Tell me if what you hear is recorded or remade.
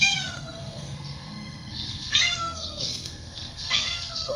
remade